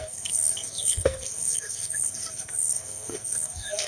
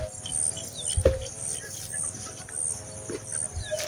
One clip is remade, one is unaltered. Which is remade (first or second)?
first